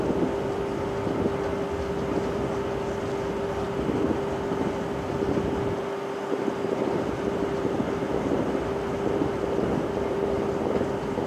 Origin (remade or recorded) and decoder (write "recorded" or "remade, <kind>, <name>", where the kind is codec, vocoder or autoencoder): recorded